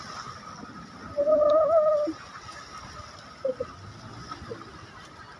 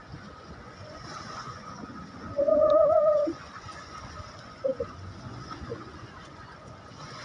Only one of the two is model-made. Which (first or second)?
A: second